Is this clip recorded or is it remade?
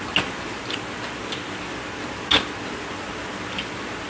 recorded